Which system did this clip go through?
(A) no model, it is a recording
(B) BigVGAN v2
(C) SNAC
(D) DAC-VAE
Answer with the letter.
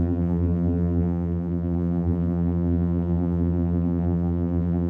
B